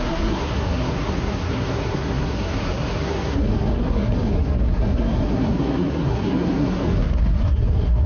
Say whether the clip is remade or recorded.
remade